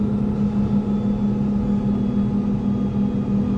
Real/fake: real